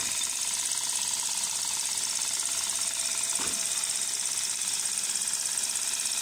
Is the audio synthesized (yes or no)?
yes